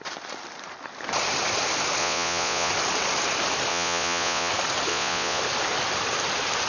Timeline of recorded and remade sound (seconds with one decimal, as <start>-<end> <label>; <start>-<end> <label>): 0.0-2.0 recorded; 2.0-2.7 remade; 2.7-3.7 recorded; 3.7-4.5 remade; 4.5-4.9 recorded; 4.9-5.4 remade; 5.4-6.7 recorded